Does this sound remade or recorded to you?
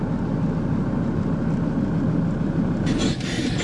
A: recorded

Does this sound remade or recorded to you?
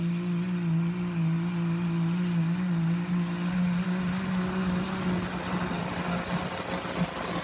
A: recorded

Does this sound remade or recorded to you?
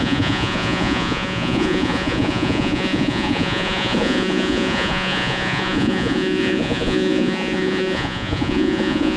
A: remade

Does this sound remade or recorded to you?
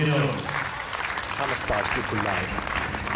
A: recorded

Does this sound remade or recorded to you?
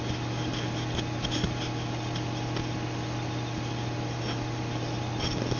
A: recorded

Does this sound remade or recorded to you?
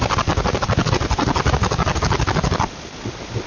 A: recorded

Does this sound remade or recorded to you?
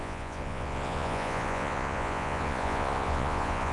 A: remade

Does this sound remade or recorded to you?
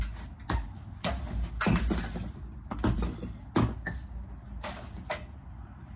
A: recorded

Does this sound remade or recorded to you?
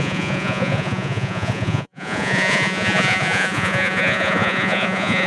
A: remade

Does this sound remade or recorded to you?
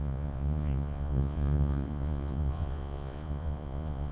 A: remade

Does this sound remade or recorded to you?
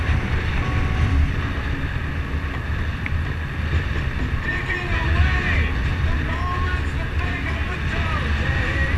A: recorded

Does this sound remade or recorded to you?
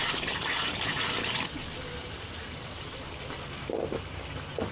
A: recorded